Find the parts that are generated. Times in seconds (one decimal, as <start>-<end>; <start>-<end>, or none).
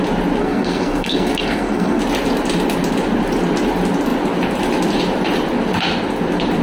0.4-2.0